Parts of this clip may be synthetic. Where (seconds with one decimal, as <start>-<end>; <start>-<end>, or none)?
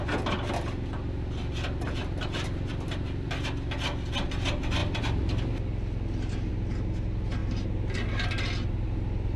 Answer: 2.0-3.3; 7.4-8.4